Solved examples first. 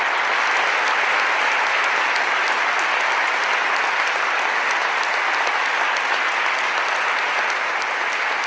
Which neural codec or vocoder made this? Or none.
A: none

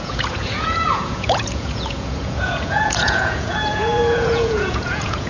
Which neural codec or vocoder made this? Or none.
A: vocoder, Vocos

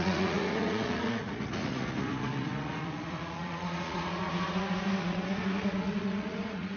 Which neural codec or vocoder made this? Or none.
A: vocoder, Vocos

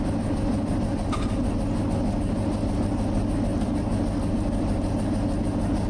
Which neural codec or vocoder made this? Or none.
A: none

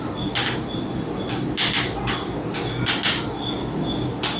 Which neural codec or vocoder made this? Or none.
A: none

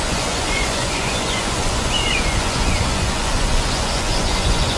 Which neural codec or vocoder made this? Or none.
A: vocoder, Vocos